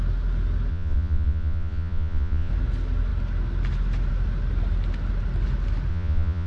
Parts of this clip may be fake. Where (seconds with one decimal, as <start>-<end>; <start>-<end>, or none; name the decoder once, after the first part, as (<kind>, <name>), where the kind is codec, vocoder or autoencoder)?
0.7-2.5 (vocoder, Vocos); 5.9-6.5